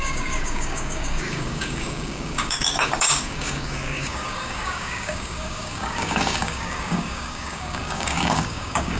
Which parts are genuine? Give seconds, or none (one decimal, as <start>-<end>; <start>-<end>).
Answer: none